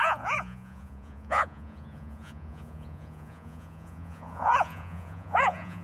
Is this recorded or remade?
remade